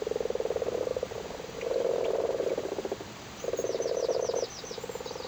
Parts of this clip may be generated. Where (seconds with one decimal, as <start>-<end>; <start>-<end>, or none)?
none